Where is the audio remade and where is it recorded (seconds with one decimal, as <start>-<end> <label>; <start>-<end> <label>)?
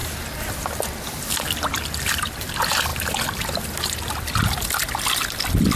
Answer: 0.0-5.8 recorded